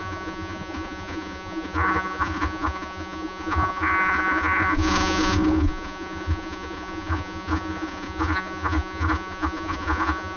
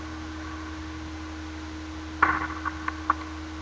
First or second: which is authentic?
second